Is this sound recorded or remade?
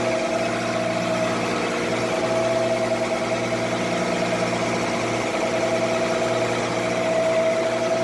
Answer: recorded